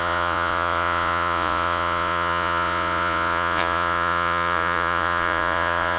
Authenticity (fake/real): fake